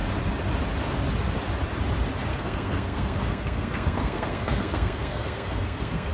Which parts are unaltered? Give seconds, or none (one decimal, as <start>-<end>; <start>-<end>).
0.0-2.3